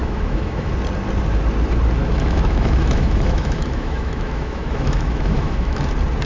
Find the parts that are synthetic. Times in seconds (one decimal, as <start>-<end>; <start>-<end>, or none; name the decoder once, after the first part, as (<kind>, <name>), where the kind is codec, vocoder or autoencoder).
0.0-0.7 (autoencoder, DAC-VAE); 2.0-5.8